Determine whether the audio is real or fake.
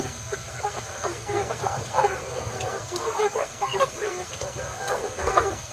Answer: fake